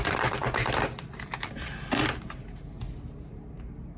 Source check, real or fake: real